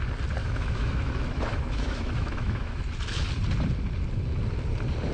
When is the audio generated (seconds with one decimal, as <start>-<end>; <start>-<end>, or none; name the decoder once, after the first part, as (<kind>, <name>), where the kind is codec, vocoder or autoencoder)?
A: 0.4-2.8 (autoencoder, DAC-VAE)